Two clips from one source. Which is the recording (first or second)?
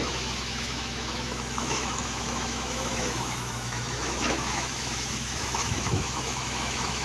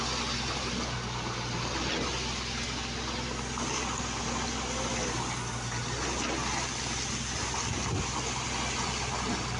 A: second